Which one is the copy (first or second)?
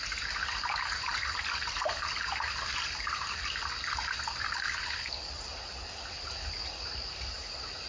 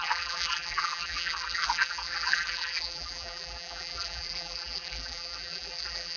second